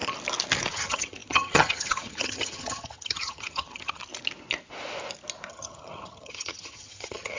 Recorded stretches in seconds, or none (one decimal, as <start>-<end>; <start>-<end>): 0.0-0.7; 4.0-5.5